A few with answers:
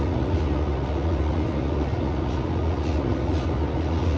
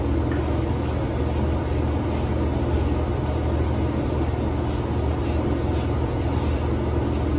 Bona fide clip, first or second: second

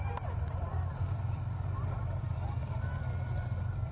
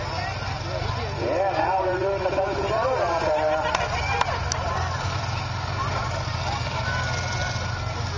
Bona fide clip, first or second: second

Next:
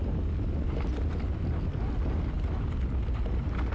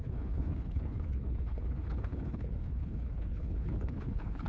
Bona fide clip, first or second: first